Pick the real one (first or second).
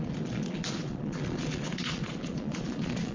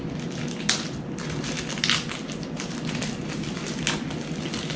second